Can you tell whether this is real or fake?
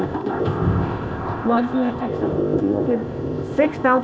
fake